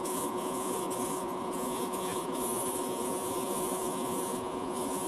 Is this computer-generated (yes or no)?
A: yes